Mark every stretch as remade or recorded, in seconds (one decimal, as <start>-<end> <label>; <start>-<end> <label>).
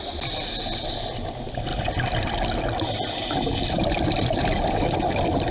0.0-5.5 recorded